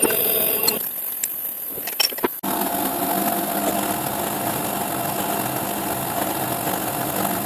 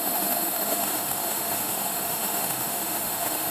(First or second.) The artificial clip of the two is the second